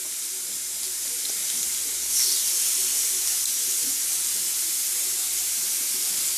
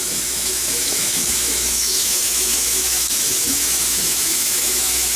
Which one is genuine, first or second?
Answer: first